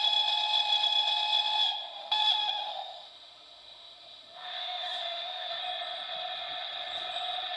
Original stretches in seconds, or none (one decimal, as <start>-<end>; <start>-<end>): 0.0-2.0; 5.6-7.6